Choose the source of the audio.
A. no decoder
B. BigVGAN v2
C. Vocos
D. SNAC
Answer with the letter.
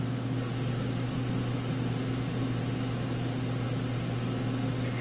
A